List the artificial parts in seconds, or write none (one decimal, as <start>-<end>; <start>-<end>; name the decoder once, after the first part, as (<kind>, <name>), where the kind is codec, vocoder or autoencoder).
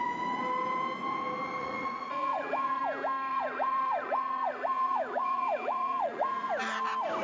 1.6-2.8 (vocoder, Vocos); 3.3-6.5